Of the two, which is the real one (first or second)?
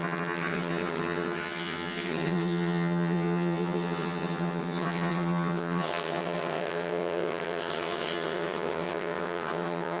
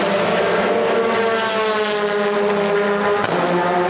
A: second